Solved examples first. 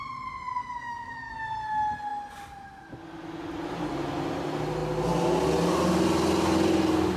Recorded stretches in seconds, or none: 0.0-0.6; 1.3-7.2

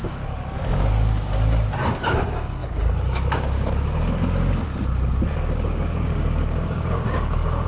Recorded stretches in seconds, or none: 4.7-5.4

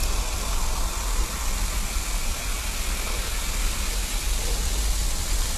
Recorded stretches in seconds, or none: 0.0-5.6

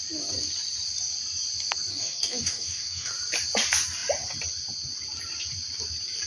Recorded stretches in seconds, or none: 0.0-1.9; 3.1-6.3

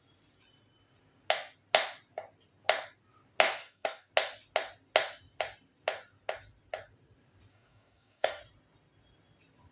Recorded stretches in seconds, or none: 0.0-3.6; 4.1-7.5; 8.4-9.7

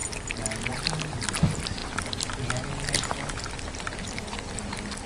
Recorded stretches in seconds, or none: 0.0-5.1